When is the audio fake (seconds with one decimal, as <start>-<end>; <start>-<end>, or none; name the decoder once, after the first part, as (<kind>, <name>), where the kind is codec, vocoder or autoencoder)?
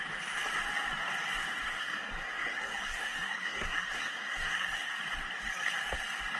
1.7-4.9 (codec, SNAC)